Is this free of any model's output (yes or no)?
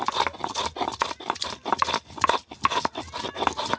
yes